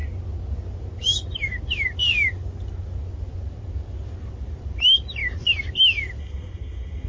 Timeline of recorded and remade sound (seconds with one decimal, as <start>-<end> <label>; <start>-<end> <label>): 0.0-6.2 recorded; 6.2-7.1 remade